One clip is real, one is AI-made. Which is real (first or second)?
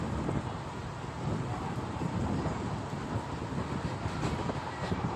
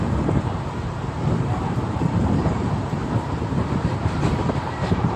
first